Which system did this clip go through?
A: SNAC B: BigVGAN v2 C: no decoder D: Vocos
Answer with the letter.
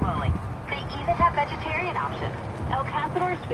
C